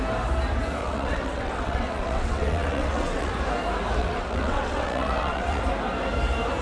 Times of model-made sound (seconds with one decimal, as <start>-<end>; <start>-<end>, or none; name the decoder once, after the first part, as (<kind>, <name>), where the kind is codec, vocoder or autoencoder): 0.8-3.3 (vocoder, WaveNeXt); 4.0-5.6